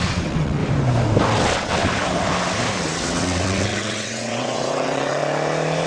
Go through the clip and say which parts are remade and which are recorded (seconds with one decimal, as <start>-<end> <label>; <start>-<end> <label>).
0.0-0.6 remade; 0.6-1.4 recorded; 1.4-1.8 remade; 1.8-3.0 recorded; 3.0-5.2 remade; 5.2-5.9 recorded

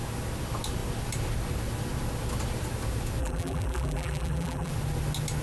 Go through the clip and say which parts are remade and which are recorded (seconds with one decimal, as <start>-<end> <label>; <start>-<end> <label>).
0.0-3.2 recorded; 3.2-4.7 remade; 4.7-5.4 recorded